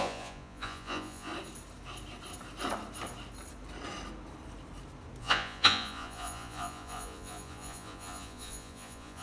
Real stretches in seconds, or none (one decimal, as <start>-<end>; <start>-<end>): 1.3-5.2